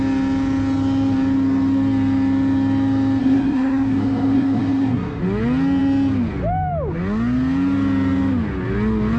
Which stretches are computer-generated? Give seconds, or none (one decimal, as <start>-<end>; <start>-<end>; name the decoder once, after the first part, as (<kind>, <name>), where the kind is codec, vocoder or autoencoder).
3.2-5.2 (codec, SNAC)